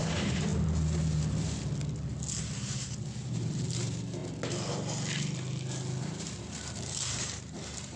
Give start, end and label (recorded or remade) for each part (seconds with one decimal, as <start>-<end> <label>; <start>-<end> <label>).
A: 0.0-0.5 remade; 0.5-2.5 recorded; 2.5-4.2 remade; 4.2-6.0 recorded; 6.0-8.0 remade

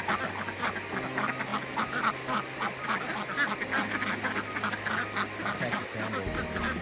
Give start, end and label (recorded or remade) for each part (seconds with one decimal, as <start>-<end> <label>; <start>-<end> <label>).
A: 0.0-6.8 recorded

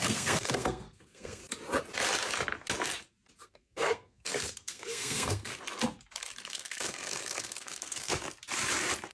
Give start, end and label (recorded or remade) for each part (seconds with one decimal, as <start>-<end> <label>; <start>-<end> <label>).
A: 0.0-1.4 remade; 1.4-3.4 recorded; 3.4-5.5 remade; 5.5-6.5 recorded; 6.5-8.1 remade; 8.1-9.1 recorded

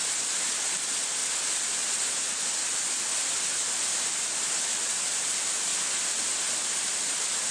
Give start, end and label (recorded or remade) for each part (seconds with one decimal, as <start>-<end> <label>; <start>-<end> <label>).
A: 0.0-7.5 recorded

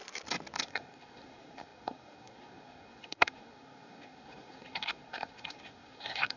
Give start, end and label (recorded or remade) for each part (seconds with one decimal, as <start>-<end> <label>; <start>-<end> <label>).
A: 0.0-0.6 recorded; 0.6-6.4 remade

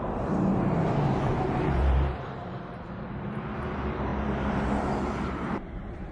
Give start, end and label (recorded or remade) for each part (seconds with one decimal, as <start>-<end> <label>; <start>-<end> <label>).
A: 0.0-4.1 remade; 4.1-5.2 recorded; 5.2-6.1 remade